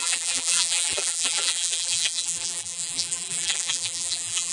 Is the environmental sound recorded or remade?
remade